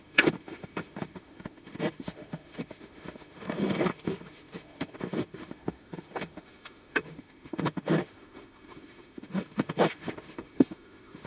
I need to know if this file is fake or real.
fake